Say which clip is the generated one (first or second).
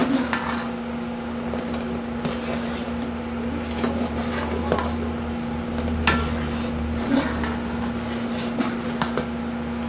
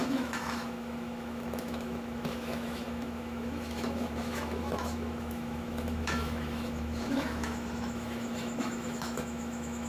second